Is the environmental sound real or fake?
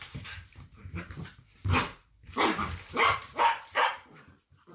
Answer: fake